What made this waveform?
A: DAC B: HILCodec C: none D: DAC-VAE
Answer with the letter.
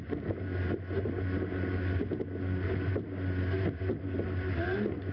C